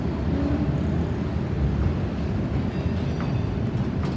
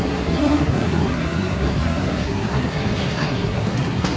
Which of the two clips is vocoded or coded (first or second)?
second